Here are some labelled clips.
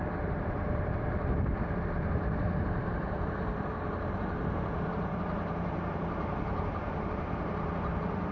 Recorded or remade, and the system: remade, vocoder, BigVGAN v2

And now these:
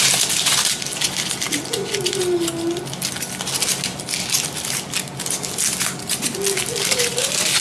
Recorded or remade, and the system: recorded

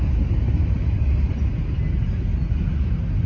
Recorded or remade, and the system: recorded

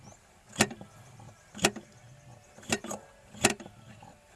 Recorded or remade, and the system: remade, vocoder, BigVGAN v2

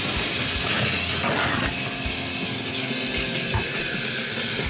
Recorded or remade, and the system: recorded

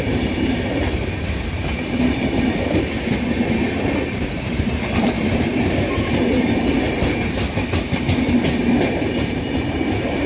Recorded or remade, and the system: remade, vocoder, BigVGAN v2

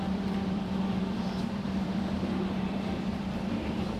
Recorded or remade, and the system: remade, vocoder, BigVGAN v2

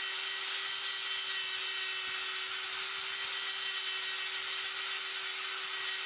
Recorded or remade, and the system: recorded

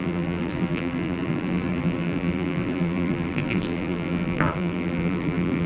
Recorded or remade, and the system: remade, vocoder, BigVGAN v2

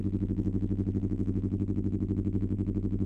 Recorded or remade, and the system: remade, vocoder, BigVGAN v2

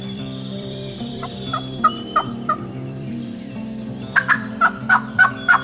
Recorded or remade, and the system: remade, vocoder, BigVGAN v2